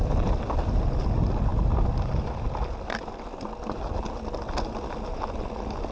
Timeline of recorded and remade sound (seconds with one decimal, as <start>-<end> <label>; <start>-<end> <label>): 0.0-5.9 recorded